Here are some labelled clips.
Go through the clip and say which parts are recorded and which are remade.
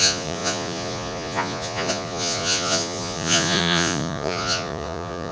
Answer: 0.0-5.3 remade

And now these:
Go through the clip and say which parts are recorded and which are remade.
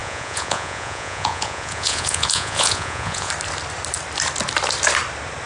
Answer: 0.0-3.3 remade; 3.3-5.5 recorded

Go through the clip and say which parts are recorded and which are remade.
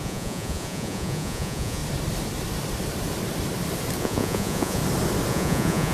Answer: 0.0-1.8 remade; 1.8-4.0 recorded; 4.0-4.8 remade; 4.8-5.3 recorded; 5.3-5.9 remade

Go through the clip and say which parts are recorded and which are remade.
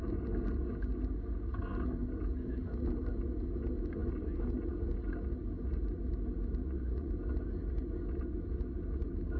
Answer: 0.0-6.6 recorded; 6.6-7.1 remade; 7.1-9.4 recorded